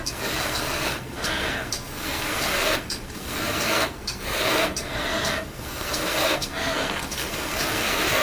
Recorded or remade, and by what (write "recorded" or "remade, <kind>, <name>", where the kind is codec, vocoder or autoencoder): remade, codec, SNAC